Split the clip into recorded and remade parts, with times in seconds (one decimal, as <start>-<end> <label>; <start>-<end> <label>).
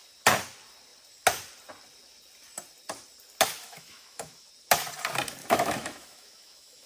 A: 0.0-3.6 recorded; 3.6-4.5 remade; 4.5-5.4 recorded; 5.4-6.9 remade